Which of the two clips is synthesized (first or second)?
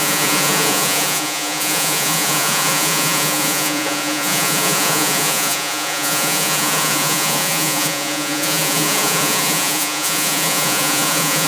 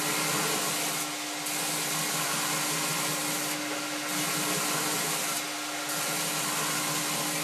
first